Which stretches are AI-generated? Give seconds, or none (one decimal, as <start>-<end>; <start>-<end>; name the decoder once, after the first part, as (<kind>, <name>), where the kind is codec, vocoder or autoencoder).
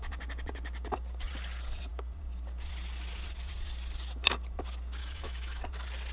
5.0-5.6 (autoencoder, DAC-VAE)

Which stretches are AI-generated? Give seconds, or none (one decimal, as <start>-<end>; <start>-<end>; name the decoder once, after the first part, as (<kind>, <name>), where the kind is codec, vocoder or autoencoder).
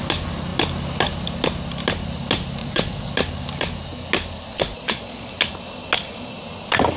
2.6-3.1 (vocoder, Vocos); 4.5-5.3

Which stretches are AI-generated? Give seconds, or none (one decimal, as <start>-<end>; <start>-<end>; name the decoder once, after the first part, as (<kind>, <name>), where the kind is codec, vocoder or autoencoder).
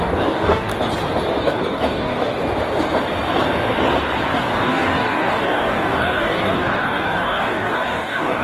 0.0-0.7 (codec, DAC); 1.4-2.4; 4.3-8.4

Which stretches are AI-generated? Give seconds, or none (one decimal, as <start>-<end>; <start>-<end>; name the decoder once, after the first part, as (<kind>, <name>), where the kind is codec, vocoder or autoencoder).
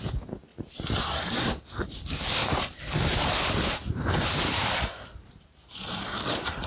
0.5-1.0 (vocoder, BigVGAN v2); 2.4-6.7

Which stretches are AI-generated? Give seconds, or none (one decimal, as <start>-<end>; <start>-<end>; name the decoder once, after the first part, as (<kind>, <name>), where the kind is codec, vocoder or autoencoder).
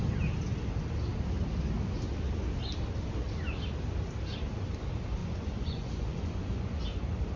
5.2-6.8 (vocoder, Vocos)